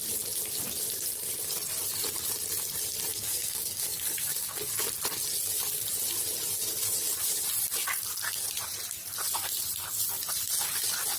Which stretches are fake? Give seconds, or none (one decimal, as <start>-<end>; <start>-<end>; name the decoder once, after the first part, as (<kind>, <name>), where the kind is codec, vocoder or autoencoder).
3.1-4.7 (codec, SNAC)

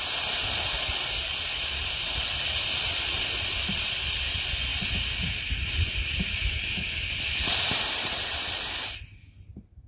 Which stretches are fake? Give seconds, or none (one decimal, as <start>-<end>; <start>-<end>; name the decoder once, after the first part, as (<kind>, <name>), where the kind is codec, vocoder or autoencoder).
none

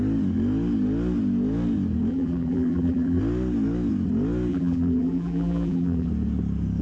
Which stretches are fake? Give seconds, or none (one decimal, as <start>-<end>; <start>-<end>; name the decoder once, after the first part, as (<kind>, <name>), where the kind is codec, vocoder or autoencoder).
2.1-3.2 (vocoder, BigVGAN v2); 4.5-6.1